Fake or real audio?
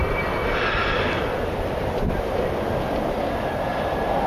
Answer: fake